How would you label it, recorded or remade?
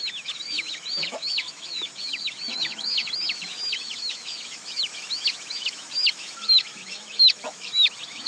remade